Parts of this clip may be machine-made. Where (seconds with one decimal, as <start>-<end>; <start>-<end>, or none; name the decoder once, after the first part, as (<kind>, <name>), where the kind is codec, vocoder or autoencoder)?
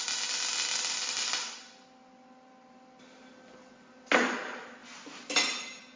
none